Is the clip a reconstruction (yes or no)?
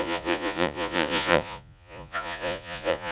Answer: yes